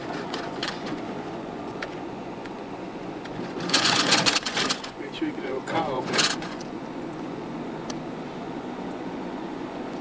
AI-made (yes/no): yes